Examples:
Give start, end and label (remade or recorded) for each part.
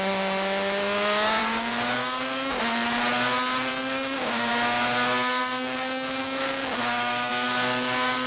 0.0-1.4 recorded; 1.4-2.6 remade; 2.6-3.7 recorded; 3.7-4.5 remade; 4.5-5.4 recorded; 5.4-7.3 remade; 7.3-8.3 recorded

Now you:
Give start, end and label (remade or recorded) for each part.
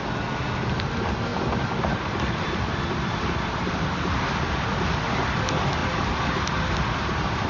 0.0-7.5 recorded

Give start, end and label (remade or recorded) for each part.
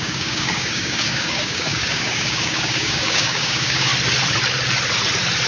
0.0-3.9 remade; 3.9-5.5 recorded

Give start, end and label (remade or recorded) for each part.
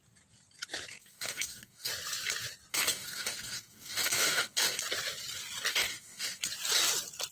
0.0-0.9 recorded; 0.9-1.9 remade; 1.9-2.7 recorded; 2.7-4.8 remade; 4.8-5.7 recorded; 5.7-6.4 remade; 6.4-7.3 recorded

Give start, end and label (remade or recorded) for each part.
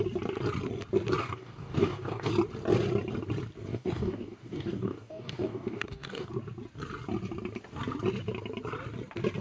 0.0-1.2 recorded; 1.2-2.3 remade; 2.3-3.7 recorded; 3.7-6.3 remade; 6.3-9.4 recorded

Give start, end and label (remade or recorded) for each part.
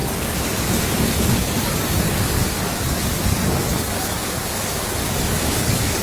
0.0-6.0 remade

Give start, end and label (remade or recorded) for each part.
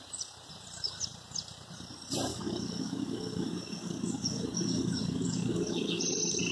0.0-2.3 recorded; 2.3-6.0 remade; 6.0-6.5 recorded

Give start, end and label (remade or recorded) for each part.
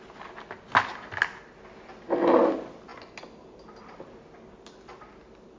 0.0-5.6 recorded